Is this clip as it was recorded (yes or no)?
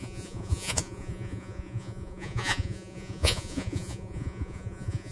no